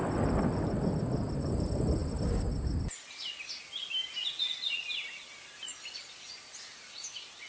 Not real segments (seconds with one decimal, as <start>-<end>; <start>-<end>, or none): none